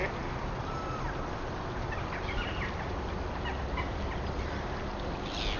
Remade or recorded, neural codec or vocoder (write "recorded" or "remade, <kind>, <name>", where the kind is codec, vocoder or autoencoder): recorded